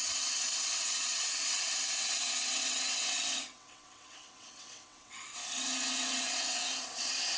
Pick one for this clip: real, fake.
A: fake